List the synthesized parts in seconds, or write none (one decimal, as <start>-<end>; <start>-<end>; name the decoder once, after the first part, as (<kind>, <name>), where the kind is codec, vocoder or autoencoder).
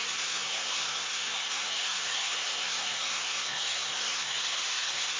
0.0-5.2 (codec, SNAC)